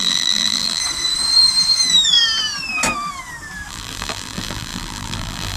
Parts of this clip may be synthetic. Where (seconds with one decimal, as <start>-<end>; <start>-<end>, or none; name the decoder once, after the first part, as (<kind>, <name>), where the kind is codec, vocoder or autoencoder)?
0.0-0.8 (vocoder, BigVGAN v2); 3.7-5.6